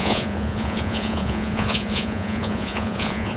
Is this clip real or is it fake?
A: fake